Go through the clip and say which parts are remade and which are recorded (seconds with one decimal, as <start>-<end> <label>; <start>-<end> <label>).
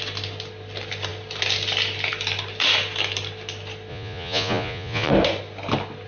0.0-3.9 recorded; 3.9-5.1 remade; 5.1-6.1 recorded